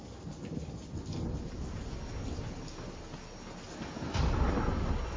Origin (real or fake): real